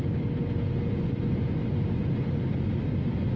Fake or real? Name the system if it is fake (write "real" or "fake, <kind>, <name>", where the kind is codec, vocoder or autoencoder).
real